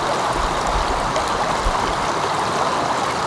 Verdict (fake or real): real